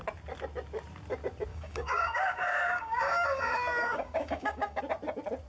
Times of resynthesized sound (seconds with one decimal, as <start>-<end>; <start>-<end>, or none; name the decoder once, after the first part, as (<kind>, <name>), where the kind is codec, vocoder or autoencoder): 1.5-4.8 (codec, DAC)